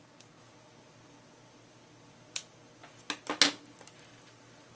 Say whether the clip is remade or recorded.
recorded